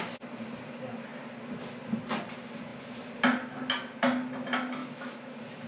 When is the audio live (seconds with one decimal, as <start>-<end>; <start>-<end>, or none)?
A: 0.0-4.8